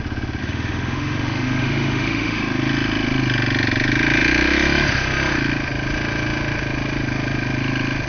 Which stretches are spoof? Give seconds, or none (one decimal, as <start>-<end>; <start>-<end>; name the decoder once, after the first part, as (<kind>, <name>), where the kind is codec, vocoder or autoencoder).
0.4-2.4 (autoencoder, DAC-VAE)